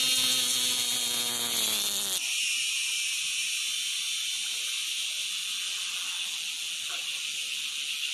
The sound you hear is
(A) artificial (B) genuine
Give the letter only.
B